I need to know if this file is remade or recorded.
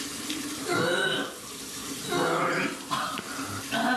recorded